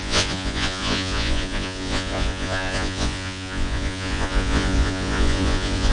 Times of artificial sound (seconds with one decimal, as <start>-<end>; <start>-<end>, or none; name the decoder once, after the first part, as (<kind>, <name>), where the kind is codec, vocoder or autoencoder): 0.0-5.9 (vocoder, Vocos)